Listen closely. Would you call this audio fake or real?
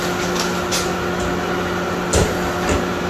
real